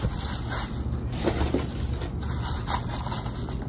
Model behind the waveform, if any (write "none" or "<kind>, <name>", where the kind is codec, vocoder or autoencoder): none